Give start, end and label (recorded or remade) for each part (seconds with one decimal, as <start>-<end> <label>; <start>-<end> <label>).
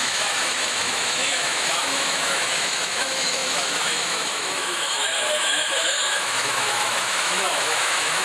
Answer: 0.0-8.2 remade